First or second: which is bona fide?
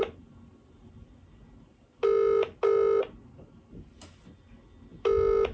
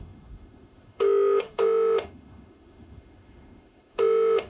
first